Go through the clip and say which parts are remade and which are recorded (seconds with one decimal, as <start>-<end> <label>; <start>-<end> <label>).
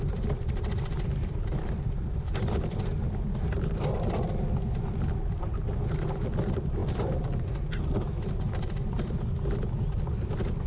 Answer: 0.0-10.7 recorded